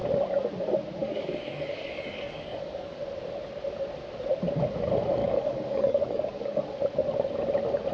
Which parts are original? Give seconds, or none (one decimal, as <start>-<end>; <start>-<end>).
0.0-1.0; 3.0-5.2; 6.6-7.9